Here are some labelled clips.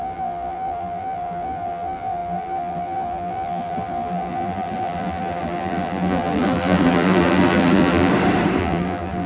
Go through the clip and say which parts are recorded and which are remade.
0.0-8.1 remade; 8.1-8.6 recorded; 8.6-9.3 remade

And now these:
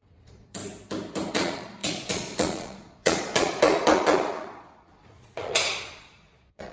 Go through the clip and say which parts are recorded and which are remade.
0.0-0.6 remade; 0.6-1.3 recorded; 1.3-6.7 remade

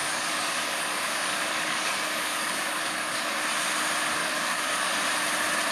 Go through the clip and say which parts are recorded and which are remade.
0.0-3.4 remade; 3.4-4.2 recorded; 4.2-4.9 remade; 4.9-5.7 recorded

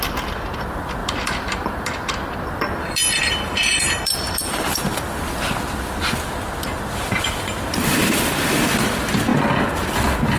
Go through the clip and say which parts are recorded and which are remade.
0.0-1.0 recorded; 1.0-4.8 remade; 4.8-10.4 recorded

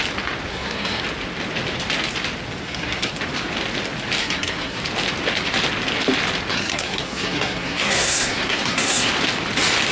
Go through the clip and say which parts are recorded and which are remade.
0.0-0.5 recorded; 0.5-1.0 remade; 1.0-2.6 recorded; 2.6-3.1 remade; 3.1-4.2 recorded; 4.2-4.8 remade; 4.8-6.5 recorded; 6.5-9.1 remade; 9.1-9.9 recorded

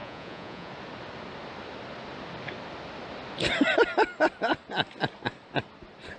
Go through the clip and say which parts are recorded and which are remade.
0.0-0.7 remade; 0.7-6.2 recorded